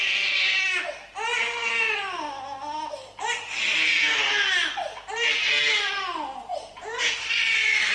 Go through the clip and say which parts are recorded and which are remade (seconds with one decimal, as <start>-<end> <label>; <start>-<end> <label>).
0.0-6.5 recorded; 6.5-7.2 remade; 7.2-7.9 recorded